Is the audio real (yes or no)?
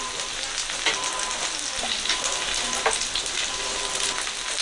yes